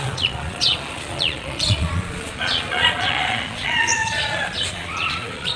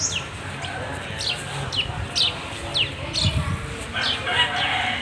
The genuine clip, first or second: second